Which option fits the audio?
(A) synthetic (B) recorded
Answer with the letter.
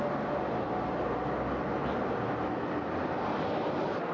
B